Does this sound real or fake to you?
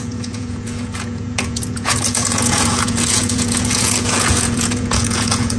fake